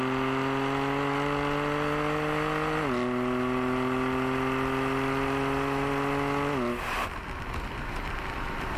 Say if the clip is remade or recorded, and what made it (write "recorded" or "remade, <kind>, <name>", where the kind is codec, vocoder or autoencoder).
recorded